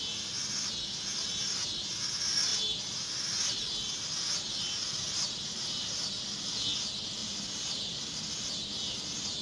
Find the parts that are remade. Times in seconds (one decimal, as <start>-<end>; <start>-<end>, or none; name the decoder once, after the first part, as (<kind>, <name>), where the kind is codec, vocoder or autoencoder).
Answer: none